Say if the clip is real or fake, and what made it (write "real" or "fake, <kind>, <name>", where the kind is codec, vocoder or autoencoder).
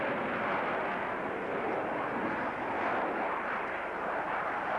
real